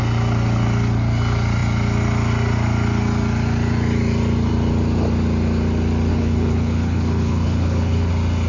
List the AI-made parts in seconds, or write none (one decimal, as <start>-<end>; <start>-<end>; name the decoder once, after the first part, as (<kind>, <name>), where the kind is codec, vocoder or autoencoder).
6.1-8.1 (codec, HILCodec)